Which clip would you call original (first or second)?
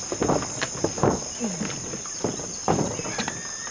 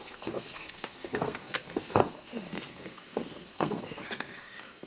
first